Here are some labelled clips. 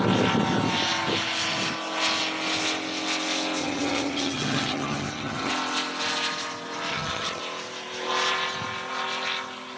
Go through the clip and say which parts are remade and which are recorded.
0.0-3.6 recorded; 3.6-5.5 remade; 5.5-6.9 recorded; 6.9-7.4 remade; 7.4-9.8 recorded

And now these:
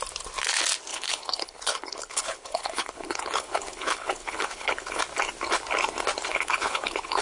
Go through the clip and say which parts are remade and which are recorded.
0.0-0.9 recorded; 0.9-5.0 remade; 5.0-6.3 recorded; 6.3-7.2 remade

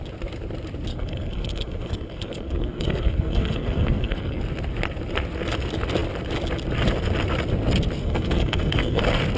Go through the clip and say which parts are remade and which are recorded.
0.0-0.9 recorded; 0.9-4.4 remade; 4.4-8.0 recorded; 8.0-9.0 remade; 9.0-9.4 recorded

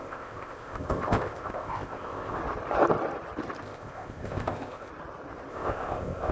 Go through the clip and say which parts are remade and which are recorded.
0.0-2.4 remade; 2.4-3.6 recorded; 3.6-4.9 remade; 4.9-5.5 recorded; 5.5-6.3 remade

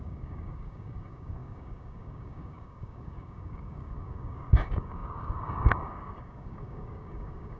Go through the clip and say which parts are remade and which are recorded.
0.0-7.6 remade